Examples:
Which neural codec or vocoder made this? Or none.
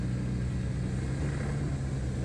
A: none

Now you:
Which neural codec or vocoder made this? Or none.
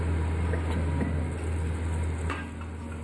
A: none